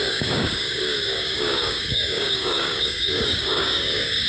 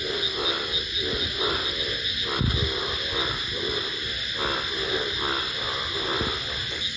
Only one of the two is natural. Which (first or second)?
second